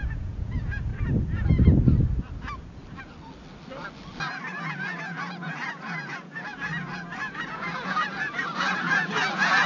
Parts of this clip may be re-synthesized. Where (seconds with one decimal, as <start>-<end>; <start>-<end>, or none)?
0.0-0.9; 4.5-9.7

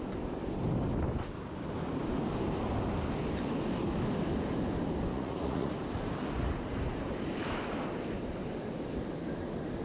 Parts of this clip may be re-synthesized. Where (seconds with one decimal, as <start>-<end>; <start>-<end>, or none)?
5.1-5.7

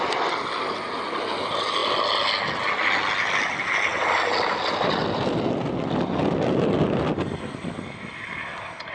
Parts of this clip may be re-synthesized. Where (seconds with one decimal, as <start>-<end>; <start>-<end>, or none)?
none

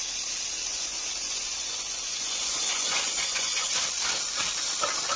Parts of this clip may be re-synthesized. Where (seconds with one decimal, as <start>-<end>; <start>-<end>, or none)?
0.7-3.8

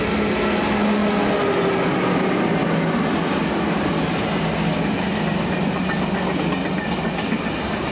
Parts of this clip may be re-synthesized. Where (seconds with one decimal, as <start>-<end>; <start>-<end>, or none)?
none

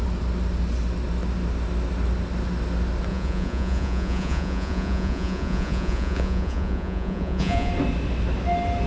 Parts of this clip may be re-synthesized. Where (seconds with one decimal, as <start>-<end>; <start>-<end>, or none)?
3.1-7.7

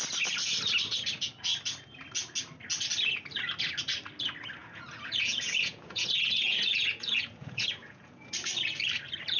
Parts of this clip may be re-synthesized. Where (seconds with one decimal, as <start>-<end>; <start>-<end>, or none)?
4.6-8.3